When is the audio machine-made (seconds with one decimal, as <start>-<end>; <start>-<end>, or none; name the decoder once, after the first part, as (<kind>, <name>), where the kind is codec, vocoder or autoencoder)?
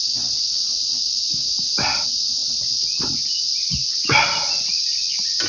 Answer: none